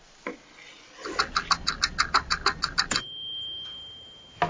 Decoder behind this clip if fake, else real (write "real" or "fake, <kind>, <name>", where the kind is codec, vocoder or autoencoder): real